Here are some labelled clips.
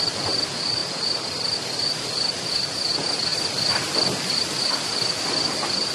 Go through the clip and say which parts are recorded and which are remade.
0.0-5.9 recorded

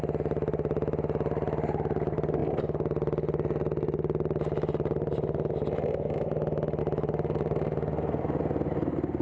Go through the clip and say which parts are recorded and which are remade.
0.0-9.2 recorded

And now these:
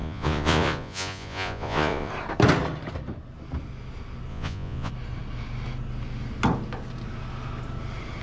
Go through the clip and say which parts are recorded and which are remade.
0.0-2.1 remade; 2.1-4.3 recorded; 4.3-4.9 remade; 4.9-8.2 recorded

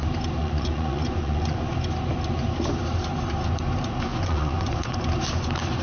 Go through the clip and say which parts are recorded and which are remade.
0.0-0.4 recorded; 0.4-1.7 remade; 1.7-4.1 recorded; 4.1-5.0 remade; 5.0-5.8 recorded

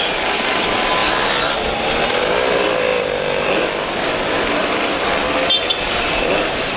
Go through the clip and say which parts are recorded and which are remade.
0.0-6.8 recorded